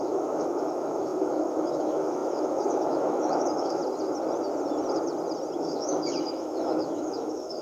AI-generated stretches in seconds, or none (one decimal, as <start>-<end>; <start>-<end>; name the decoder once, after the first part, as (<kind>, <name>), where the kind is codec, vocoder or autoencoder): 0.0-3.8 (autoencoder, DAC-VAE); 5.6-7.6